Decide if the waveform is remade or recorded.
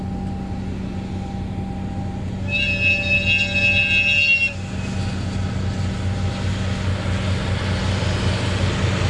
recorded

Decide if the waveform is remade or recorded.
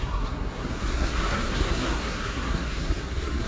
remade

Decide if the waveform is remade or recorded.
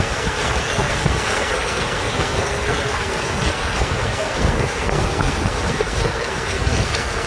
remade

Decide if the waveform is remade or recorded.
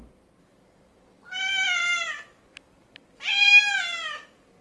recorded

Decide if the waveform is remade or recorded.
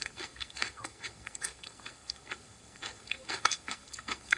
remade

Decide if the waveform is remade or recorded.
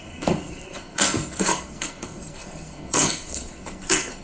remade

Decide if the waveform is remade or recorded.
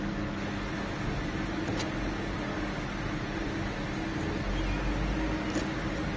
recorded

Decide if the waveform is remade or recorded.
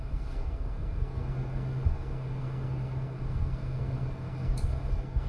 remade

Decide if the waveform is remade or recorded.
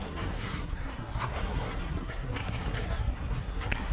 remade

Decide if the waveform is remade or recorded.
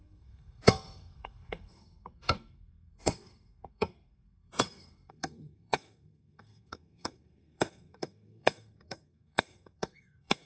remade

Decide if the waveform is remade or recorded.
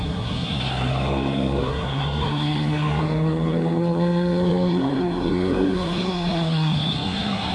remade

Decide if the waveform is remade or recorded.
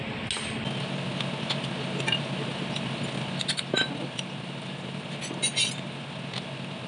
recorded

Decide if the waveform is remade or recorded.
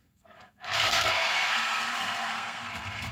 remade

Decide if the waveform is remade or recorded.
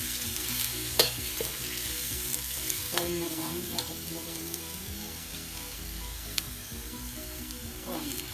remade